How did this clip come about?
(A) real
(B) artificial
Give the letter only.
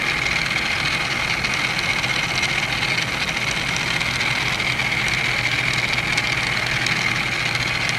A